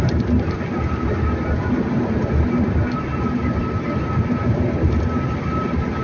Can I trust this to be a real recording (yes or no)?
yes